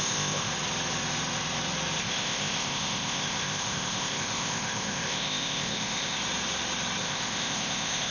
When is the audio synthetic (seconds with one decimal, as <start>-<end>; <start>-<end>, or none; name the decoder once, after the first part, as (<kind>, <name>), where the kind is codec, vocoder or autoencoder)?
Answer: 0.0-0.5 (codec, ZipCodec); 2.0-6.2; 7.0-8.1